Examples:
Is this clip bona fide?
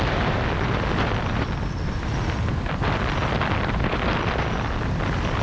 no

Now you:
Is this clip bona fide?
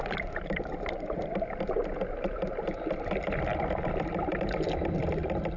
no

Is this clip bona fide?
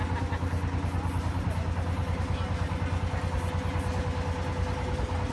yes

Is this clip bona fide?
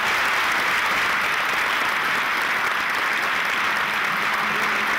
yes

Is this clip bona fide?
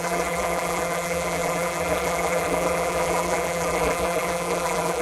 no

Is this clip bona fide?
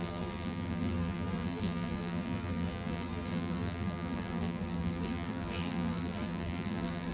no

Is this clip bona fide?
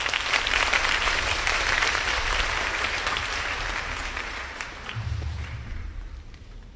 no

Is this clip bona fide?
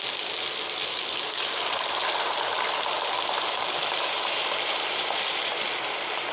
no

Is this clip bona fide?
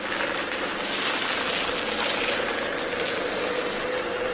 yes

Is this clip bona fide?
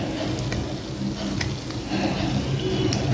yes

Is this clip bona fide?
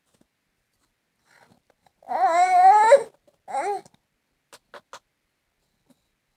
yes